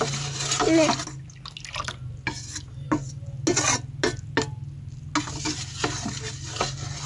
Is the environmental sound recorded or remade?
recorded